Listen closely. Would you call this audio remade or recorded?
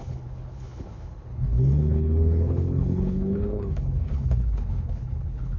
remade